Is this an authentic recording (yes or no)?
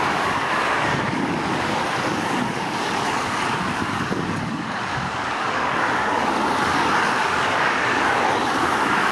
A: no